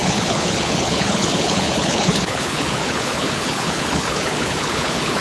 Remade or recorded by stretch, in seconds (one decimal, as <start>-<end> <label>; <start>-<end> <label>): 0.0-5.2 remade